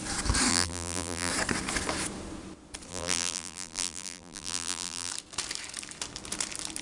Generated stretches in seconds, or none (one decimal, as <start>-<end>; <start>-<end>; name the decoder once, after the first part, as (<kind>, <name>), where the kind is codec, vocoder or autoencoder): 0.5-1.3 (vocoder, BigVGAN v2); 2.9-5.1